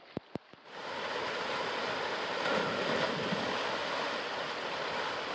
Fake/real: real